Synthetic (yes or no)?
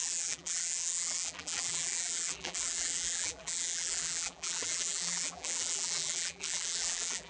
yes